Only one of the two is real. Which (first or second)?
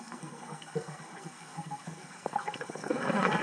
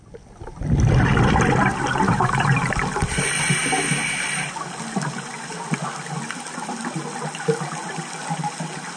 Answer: second